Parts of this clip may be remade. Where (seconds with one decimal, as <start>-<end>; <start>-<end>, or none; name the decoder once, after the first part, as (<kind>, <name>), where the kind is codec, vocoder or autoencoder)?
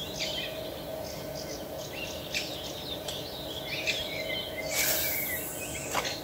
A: none